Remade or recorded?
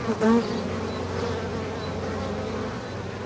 recorded